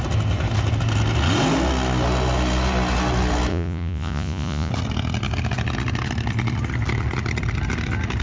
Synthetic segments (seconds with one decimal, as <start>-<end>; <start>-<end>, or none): 3.5-4.7